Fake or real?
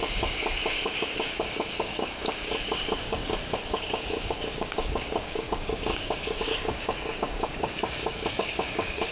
fake